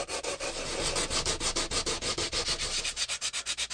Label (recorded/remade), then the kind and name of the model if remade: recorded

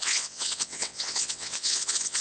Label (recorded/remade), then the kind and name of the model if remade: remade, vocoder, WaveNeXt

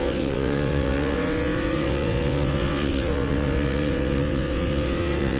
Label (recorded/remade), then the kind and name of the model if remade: remade, vocoder, WaveNeXt